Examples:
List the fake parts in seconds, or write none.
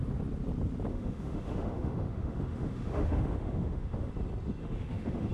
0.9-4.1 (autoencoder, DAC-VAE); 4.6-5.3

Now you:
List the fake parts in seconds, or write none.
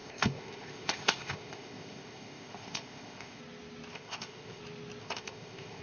0.0-3.4 (codec, ZipCodec); 3.9-4.6; 5.0-5.8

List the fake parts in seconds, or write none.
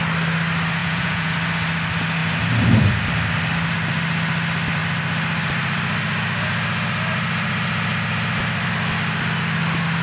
0.8-1.3 (vocoder, Vocos)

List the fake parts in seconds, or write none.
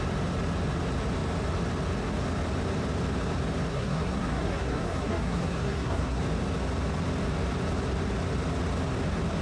3.7-6.2 (codec, SNAC)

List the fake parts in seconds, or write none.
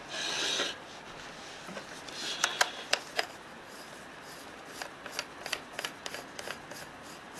none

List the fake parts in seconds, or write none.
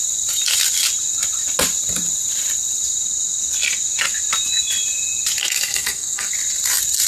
5.4-6.3 (codec, SNAC)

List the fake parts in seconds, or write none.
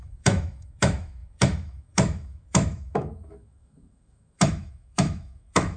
0.0-5.8 (autoencoder, DAC-VAE)